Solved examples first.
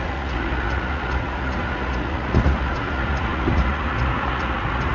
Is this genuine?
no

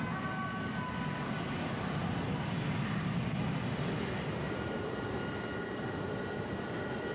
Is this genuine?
yes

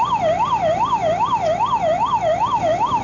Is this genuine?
yes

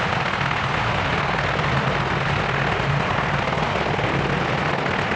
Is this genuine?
yes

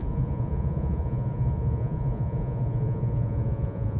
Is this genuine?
no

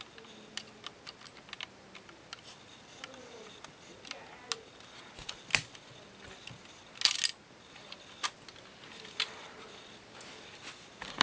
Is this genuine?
yes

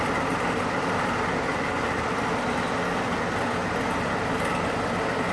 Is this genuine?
yes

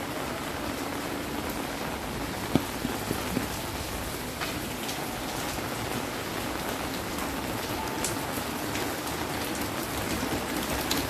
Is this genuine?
yes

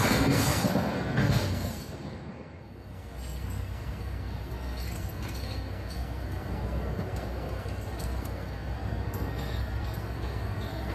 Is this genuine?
no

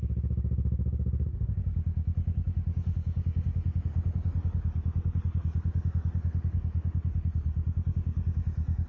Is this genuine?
no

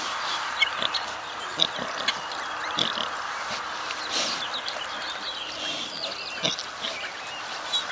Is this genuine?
yes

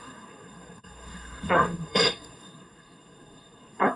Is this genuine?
no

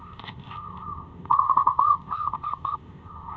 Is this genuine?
no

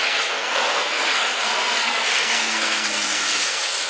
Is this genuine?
no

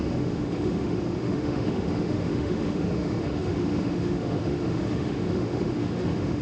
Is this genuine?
no